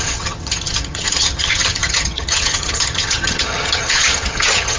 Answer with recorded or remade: remade